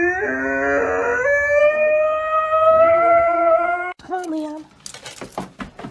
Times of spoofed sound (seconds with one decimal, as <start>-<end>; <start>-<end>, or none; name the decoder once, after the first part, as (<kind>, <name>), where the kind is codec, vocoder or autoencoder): 1.6-4.3 (codec, SNAC)